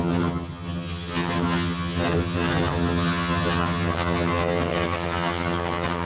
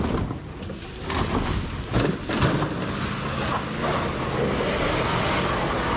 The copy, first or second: first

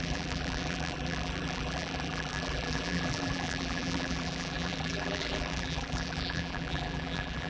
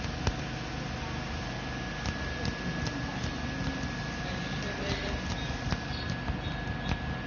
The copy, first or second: first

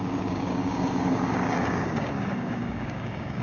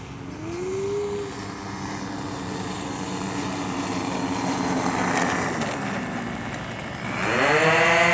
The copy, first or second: first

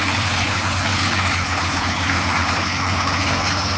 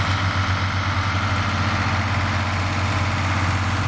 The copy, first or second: first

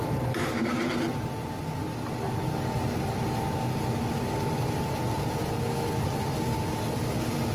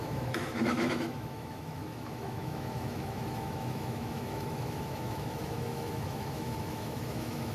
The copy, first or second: second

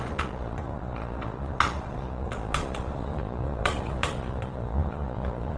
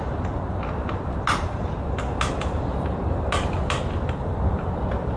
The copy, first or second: first